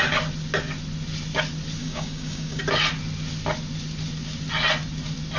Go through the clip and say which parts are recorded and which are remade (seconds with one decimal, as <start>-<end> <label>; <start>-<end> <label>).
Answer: 0.0-1.8 recorded; 1.8-2.6 remade; 2.6-5.4 recorded